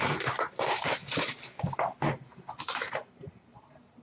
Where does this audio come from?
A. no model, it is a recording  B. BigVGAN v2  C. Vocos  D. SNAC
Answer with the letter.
B